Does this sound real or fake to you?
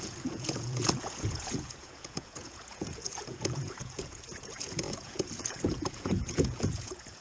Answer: fake